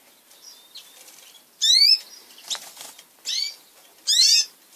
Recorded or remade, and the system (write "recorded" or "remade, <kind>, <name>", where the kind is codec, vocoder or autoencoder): recorded